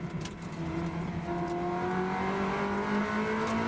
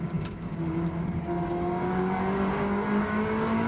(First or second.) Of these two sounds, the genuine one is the first